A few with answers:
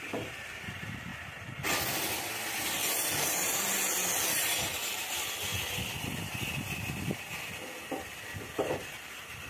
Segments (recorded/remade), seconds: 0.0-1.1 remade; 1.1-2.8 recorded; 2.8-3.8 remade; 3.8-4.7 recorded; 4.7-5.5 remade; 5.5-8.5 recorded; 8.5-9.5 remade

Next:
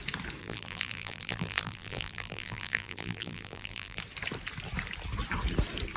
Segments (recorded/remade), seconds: 0.0-0.4 recorded; 0.4-4.0 remade; 4.0-6.0 recorded